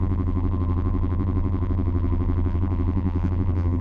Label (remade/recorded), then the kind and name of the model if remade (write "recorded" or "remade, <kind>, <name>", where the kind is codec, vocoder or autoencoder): remade, vocoder, BigVGAN v2